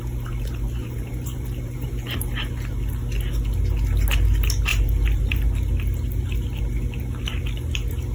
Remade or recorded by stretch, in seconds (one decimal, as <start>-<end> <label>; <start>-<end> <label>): 0.0-0.8 recorded; 0.8-1.9 remade; 1.9-4.7 recorded; 4.7-5.4 remade; 5.4-8.1 recorded